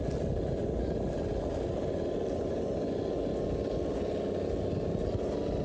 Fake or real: real